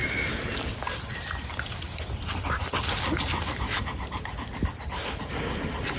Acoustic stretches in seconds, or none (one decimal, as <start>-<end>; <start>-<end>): 0.0-6.0